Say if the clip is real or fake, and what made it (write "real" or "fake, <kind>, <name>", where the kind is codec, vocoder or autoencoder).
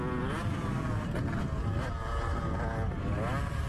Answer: real